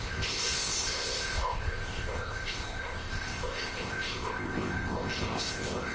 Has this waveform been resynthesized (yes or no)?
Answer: yes